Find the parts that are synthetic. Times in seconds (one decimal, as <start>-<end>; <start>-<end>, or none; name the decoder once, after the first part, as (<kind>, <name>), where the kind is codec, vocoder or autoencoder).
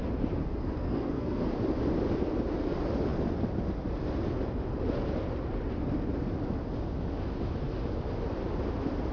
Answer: 0.4-1.5 (codec, SNAC)